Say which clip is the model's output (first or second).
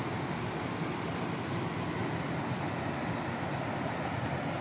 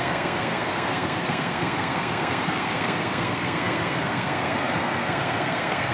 second